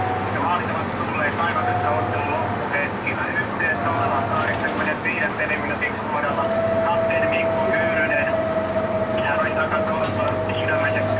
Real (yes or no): yes